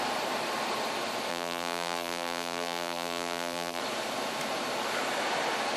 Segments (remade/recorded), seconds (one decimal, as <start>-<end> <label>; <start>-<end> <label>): 0.0-1.3 recorded; 1.3-3.8 remade; 3.8-5.8 recorded